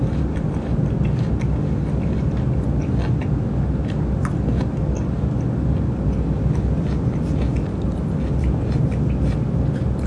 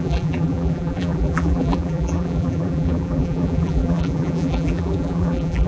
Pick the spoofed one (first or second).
second